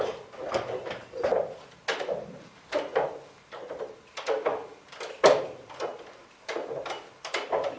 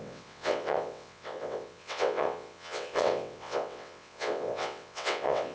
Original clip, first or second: first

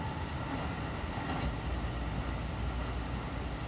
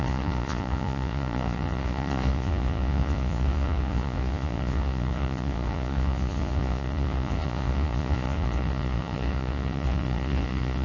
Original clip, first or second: first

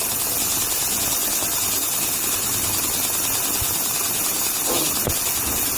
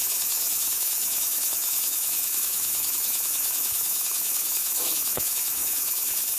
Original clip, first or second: first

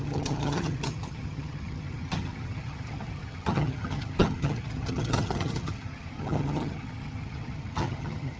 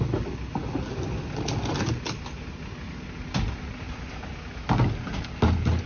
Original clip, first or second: second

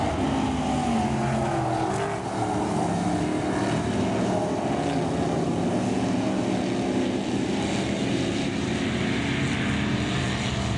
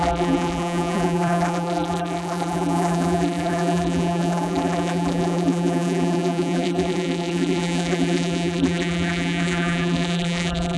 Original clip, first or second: first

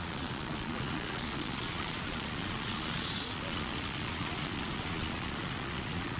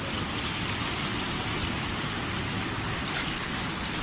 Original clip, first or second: second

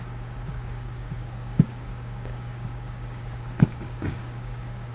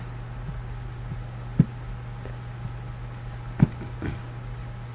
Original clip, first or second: second